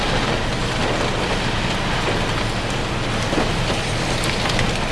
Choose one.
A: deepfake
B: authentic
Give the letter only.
B